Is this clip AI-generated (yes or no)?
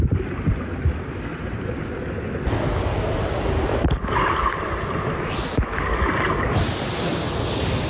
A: no